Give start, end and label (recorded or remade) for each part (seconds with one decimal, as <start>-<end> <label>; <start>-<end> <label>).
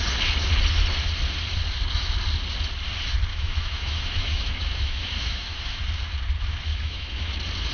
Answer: 0.0-3.3 recorded; 3.3-5.8 remade; 5.8-6.7 recorded; 6.7-7.3 remade; 7.3-7.7 recorded